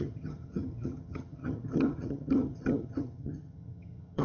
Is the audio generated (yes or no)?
yes